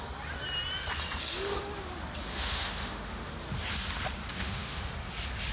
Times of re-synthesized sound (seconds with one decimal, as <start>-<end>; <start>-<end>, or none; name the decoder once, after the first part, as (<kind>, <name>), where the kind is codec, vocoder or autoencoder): 2.3-3.3 (autoencoder, DAC-VAE); 4.3-4.9